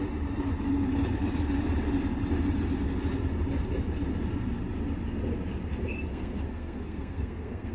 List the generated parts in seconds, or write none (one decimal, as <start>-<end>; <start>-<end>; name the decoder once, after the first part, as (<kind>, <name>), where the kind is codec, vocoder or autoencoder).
6.1-7.7 (codec, SNAC)